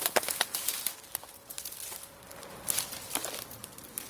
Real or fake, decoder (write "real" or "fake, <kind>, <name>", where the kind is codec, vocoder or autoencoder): real